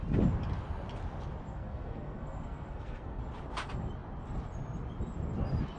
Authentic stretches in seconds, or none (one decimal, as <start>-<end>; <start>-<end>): 0.0-1.5; 3.2-5.8